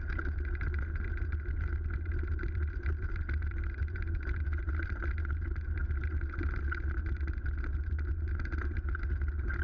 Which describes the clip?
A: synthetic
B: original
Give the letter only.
B